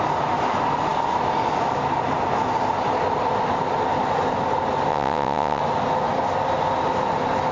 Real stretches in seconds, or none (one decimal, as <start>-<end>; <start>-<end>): 0.0-4.9; 5.6-7.5

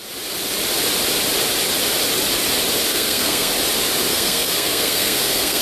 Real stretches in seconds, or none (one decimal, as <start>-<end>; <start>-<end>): 0.0-2.9; 3.5-4.1